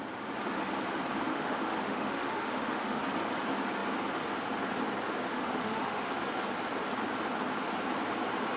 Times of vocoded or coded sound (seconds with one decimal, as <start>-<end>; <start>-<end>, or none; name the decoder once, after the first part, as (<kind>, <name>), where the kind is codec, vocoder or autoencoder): 1.3-3.0 (autoencoder, DAC-VAE); 5.3-6.1

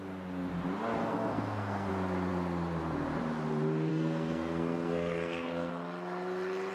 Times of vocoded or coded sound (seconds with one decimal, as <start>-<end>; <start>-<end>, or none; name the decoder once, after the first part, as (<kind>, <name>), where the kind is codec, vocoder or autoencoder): 1.0-1.9 (codec, SNAC); 3.9-5.7